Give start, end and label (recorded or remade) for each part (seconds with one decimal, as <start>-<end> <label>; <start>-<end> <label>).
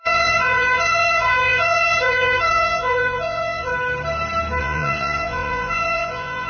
0.0-3.7 remade; 3.7-4.6 recorded; 4.6-6.5 remade